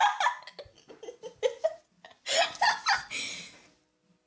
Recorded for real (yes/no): yes